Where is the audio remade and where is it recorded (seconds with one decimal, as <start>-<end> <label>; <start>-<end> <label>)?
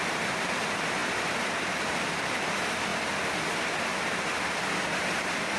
0.0-2.9 remade; 2.9-5.0 recorded; 5.0-5.6 remade